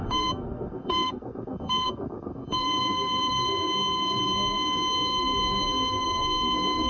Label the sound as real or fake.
fake